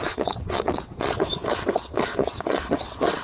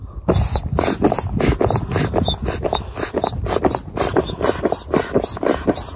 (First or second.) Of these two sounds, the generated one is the first